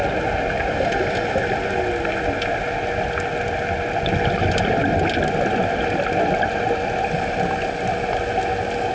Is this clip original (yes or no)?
yes